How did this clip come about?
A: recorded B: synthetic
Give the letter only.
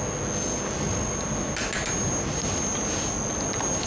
A